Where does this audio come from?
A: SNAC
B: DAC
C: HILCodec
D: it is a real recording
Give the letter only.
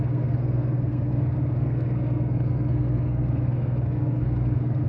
A